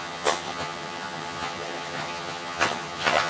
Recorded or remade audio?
remade